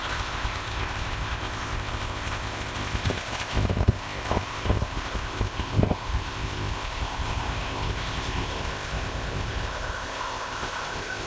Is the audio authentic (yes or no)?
no